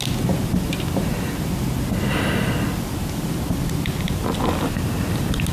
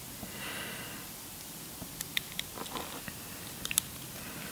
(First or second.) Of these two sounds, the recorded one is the first